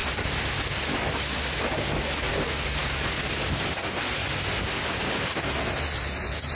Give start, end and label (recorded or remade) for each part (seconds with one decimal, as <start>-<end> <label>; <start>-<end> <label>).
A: 0.0-6.5 recorded